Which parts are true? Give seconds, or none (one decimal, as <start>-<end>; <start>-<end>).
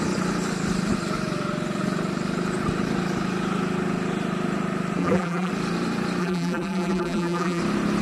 0.0-5.0; 5.5-6.2; 7.6-8.0